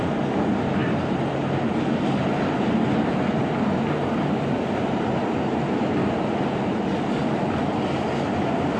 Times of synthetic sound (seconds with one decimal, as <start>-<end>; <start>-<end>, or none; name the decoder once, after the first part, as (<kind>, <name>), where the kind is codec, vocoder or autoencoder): 6.0-6.8 (vocoder, BigVGAN v2)